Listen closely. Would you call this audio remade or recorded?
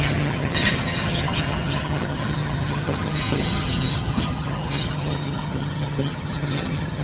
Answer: remade